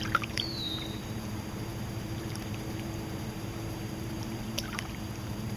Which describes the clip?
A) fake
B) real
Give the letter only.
A